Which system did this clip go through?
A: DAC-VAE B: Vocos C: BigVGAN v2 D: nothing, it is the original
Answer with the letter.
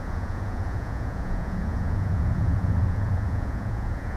B